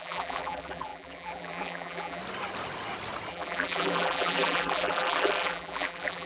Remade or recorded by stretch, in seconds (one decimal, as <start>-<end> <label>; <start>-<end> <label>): 0.0-2.2 remade; 2.2-3.3 recorded; 3.3-6.3 remade